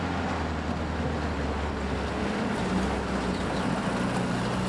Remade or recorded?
recorded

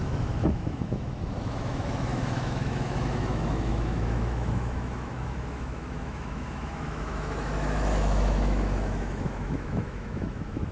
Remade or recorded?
remade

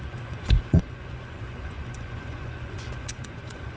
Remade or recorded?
remade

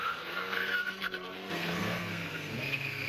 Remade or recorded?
remade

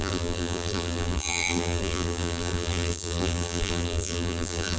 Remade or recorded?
remade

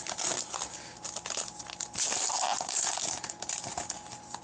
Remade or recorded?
recorded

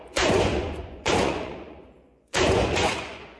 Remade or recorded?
remade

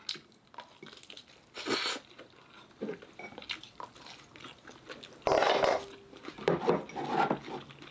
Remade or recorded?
recorded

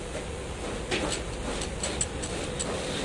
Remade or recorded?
recorded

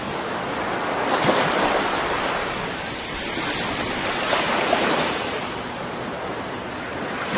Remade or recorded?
recorded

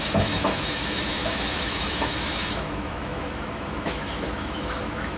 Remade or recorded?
remade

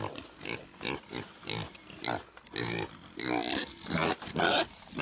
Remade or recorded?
recorded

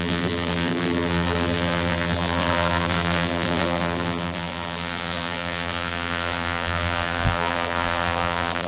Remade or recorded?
remade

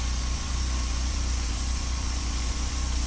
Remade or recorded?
remade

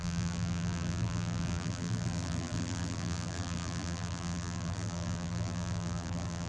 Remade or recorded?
remade